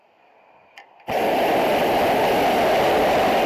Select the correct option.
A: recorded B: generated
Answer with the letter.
A